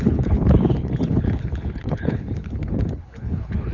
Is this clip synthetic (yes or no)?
yes